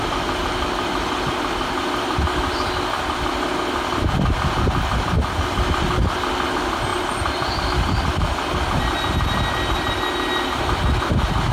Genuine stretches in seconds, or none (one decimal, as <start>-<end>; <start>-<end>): 0.0-11.5